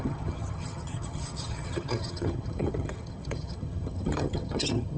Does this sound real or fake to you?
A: fake